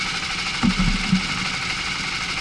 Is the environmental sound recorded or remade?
recorded